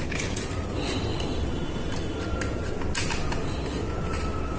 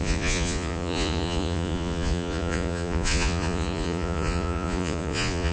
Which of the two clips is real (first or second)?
first